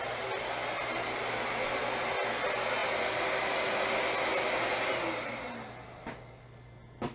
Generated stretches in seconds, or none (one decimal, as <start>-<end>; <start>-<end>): none